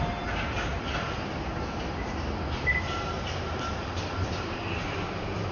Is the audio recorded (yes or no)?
yes